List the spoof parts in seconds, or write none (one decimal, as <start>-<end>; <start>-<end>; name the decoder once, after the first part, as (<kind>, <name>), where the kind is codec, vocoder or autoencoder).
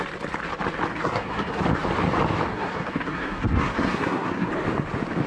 0.9-1.6 (codec, SNAC); 2.5-4.5